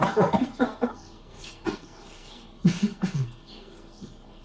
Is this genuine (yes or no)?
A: no